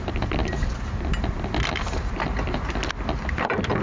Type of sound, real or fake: real